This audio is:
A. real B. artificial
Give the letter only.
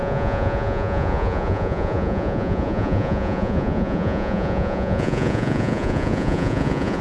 B